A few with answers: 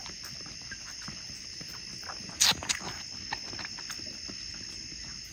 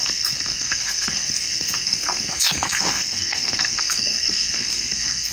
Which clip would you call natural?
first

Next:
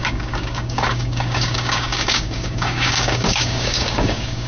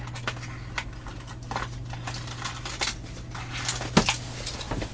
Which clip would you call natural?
second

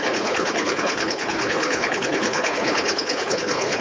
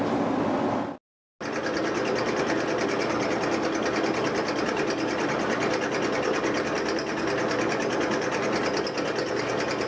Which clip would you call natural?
second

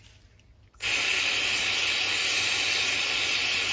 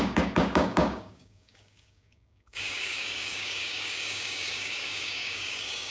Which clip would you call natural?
first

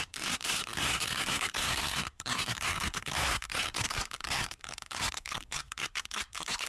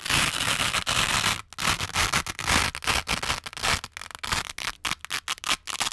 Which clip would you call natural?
second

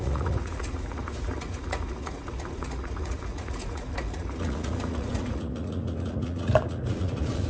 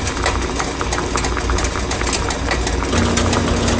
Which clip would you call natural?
second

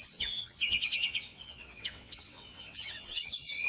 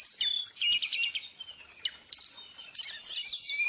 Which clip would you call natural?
second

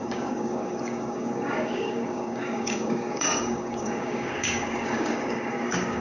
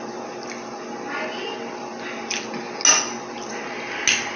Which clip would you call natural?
second